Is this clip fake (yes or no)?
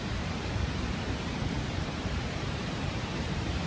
yes